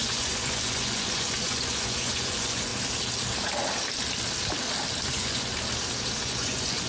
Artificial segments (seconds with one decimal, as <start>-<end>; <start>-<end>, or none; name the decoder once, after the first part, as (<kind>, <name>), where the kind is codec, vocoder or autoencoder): 0.0-2.7 (vocoder, Vocos); 5.1-5.5; 6.2-6.9